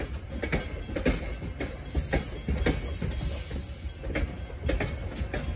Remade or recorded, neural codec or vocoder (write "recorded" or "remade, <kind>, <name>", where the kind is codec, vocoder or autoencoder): recorded